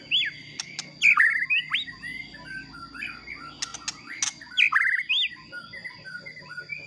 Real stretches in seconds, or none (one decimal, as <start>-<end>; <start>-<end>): 0.0-6.9